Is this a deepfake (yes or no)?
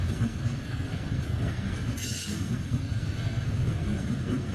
yes